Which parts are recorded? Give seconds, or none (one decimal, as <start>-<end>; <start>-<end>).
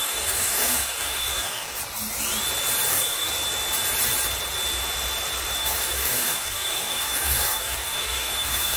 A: 1.8-2.9; 3.3-5.6